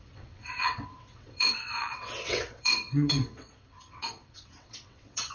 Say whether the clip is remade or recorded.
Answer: remade